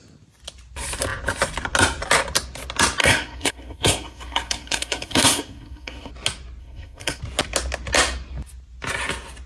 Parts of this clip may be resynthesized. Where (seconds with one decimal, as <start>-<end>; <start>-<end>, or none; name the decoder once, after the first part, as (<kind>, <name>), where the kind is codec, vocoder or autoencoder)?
3.0-6.1 (codec, SNAC); 6.6-7.2